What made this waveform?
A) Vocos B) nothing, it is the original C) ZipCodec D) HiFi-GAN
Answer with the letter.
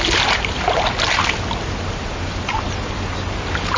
B